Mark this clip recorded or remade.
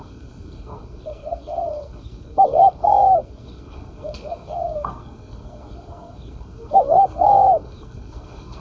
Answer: remade